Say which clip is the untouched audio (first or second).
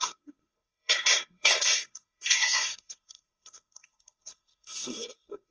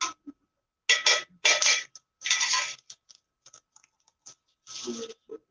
second